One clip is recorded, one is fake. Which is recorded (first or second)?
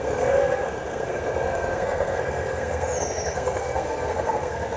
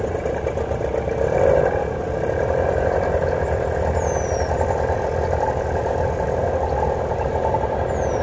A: second